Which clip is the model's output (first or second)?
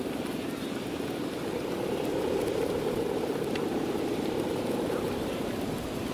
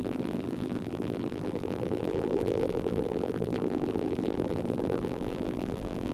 second